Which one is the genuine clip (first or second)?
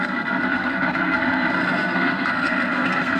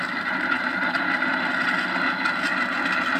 second